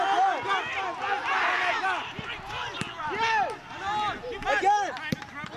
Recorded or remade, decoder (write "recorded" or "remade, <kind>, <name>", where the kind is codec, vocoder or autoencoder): recorded